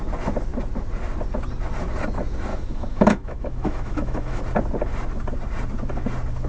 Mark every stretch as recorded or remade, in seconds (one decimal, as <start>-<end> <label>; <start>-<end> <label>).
0.0-2.5 recorded; 2.5-4.4 remade; 4.4-6.5 recorded